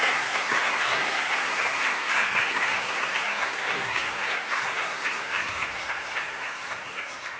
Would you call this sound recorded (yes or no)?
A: no